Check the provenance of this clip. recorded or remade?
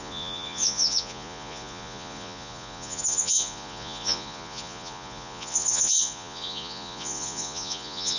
remade